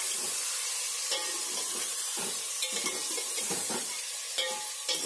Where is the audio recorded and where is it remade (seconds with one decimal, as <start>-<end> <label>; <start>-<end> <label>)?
0.0-5.1 recorded